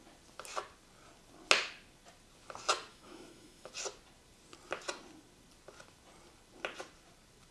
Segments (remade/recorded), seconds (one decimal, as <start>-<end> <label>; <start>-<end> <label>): 0.0-2.9 recorded; 2.9-3.7 remade; 3.7-7.5 recorded